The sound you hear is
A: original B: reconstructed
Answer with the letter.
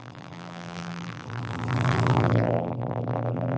B